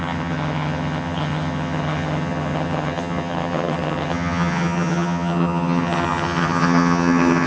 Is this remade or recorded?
remade